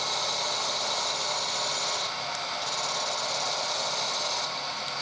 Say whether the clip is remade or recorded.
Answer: recorded